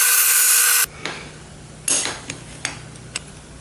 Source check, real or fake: real